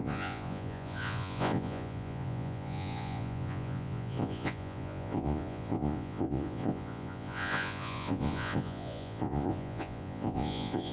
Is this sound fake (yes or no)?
yes